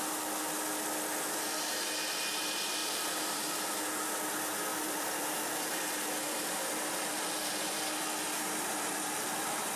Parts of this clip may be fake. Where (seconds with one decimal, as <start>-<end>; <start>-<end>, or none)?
2.8-3.8; 4.7-9.8